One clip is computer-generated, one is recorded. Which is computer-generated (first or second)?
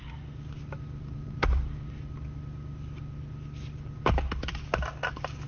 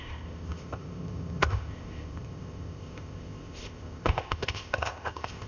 second